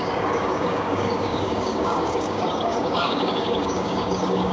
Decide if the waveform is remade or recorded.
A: remade